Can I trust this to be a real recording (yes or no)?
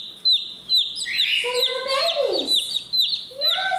yes